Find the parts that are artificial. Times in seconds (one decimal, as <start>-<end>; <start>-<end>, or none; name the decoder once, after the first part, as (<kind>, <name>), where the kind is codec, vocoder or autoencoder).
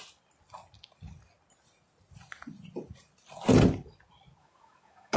4.4-5.2 (autoencoder, DAC-VAE)